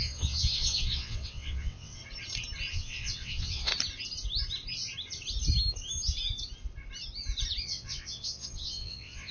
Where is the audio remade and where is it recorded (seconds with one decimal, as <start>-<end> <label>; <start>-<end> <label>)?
0.0-2.0 remade; 2.0-2.7 recorded; 2.7-3.7 remade; 3.7-7.6 recorded; 7.6-9.3 remade